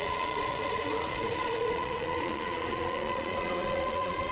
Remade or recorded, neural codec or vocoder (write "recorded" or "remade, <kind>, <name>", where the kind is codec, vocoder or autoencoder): remade, vocoder, Vocos